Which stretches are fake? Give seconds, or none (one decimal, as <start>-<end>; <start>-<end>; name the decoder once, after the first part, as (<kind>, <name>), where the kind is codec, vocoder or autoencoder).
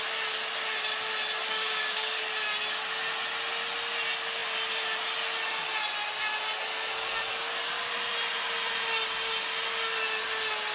1.4-2.2 (codec, DAC)